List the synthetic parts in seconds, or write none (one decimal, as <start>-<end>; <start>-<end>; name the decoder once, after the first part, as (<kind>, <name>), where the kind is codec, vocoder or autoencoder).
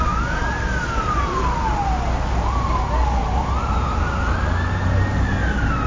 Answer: 3.2-4.0 (vocoder, BigVGAN v2)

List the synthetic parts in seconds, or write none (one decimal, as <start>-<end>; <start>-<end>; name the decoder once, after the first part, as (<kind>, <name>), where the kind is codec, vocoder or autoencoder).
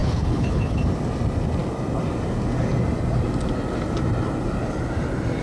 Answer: 0.0-0.8 (codec, HILCodec)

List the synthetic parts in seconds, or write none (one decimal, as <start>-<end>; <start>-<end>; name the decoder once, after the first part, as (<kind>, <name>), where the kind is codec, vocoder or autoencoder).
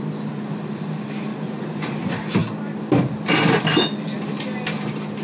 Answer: 1.3-1.9 (vocoder, BigVGAN v2)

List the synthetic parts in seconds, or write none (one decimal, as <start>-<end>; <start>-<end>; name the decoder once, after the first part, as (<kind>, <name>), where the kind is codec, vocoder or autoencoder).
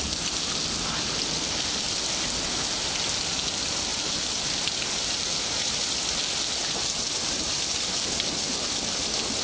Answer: 3.9-4.4 (vocoder, BigVGAN v2); 6.6-7.6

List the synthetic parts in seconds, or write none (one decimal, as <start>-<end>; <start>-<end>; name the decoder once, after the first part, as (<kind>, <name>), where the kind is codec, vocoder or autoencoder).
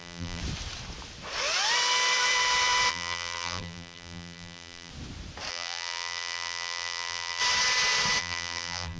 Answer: 0.0-0.4 (vocoder, BigVGAN v2); 2.9-4.9; 5.5-7.4; 8.2-9.0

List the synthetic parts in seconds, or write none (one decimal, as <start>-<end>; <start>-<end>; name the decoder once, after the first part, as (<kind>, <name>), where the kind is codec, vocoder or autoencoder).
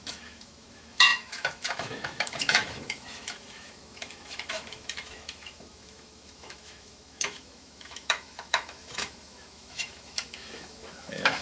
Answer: 0.0-11.4 (autoencoder, DAC-VAE)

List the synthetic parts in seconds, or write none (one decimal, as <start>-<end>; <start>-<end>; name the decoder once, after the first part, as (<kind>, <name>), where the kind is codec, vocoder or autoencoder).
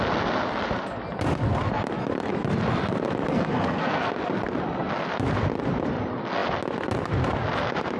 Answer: 3.3-4.1 (codec, SNAC)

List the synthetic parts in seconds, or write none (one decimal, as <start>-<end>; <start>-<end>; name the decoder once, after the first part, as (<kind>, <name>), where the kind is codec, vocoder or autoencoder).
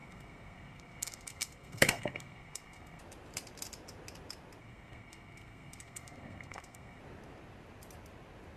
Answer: 0.0-3.0 (codec, SNAC); 4.6-7.0